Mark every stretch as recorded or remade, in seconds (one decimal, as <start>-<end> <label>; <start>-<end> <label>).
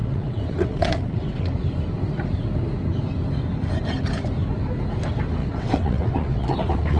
0.0-1.5 remade; 1.5-5.4 recorded; 5.4-7.0 remade